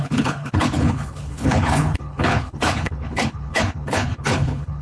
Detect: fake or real fake